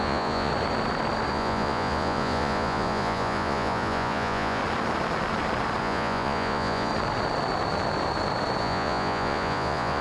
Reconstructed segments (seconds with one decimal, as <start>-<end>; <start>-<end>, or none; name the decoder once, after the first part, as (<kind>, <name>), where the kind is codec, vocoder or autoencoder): 0.0-0.5 (vocoder, Vocos); 1.3-4.6; 5.8-6.9; 8.6-10.0

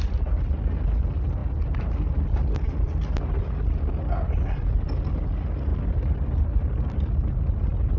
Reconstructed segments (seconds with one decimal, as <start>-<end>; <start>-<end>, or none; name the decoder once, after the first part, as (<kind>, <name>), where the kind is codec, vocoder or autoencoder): none